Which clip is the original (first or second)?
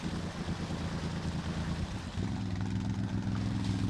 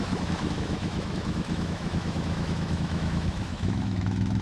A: first